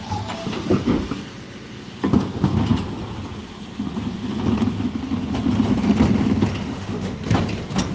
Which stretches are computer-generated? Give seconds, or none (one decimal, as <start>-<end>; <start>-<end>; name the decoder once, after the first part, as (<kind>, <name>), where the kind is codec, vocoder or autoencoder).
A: 6.5-7.2 (autoencoder, DAC-VAE)